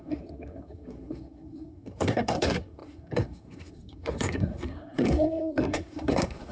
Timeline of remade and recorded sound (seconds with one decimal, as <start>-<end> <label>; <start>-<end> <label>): 0.0-6.5 remade